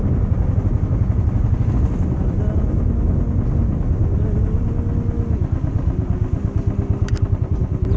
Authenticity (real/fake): real